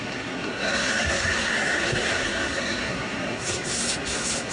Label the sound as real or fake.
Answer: fake